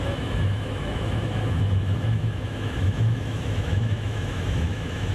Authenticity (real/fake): fake